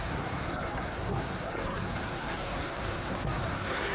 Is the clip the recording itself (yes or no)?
no